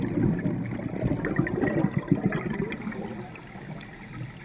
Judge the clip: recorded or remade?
recorded